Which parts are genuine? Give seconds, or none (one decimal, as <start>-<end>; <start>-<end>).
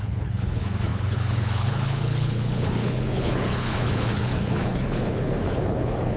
none